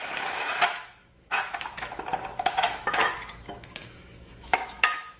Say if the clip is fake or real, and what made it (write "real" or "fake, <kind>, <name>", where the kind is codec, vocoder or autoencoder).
fake, autoencoder, DAC-VAE